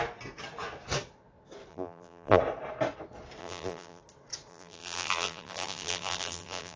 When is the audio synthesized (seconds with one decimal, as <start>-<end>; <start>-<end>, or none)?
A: 1.7-2.4; 3.4-4.0; 4.5-6.8